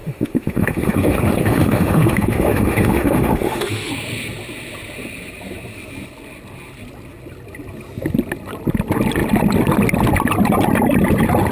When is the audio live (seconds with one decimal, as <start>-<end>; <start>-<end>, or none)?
3.9-11.5